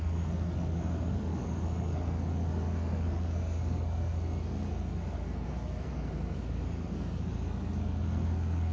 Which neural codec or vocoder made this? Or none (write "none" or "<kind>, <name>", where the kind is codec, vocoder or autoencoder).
codec, SNAC